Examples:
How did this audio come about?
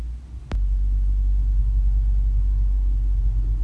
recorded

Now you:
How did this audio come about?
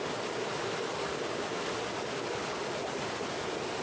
recorded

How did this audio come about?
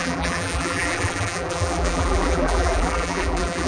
remade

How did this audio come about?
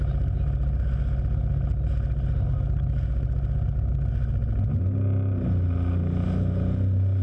recorded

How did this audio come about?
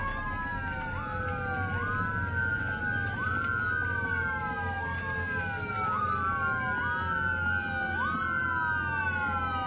recorded